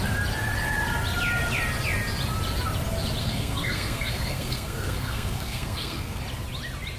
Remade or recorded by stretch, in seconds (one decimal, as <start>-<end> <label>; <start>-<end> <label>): 0.0-3.2 recorded; 3.2-6.2 remade; 6.2-7.0 recorded